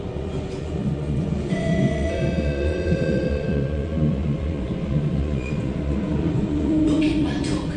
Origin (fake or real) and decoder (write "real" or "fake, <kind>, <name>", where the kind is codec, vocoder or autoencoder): fake, vocoder, Vocos